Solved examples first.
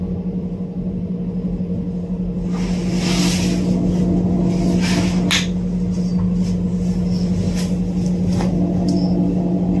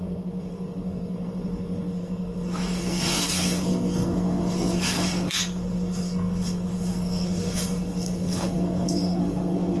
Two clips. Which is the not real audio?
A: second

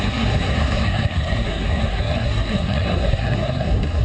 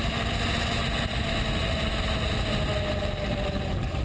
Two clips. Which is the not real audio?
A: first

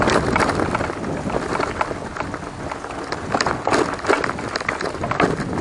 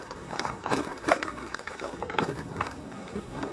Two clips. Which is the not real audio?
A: second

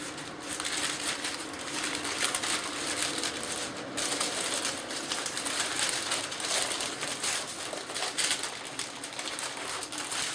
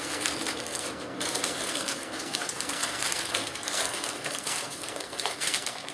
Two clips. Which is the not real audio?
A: second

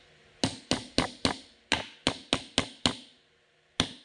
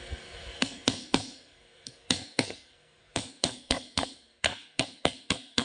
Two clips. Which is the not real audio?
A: second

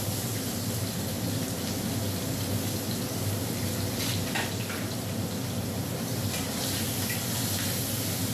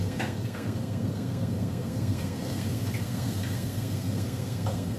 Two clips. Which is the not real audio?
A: second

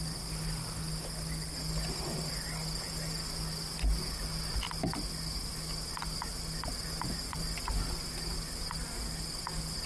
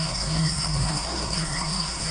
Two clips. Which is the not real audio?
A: second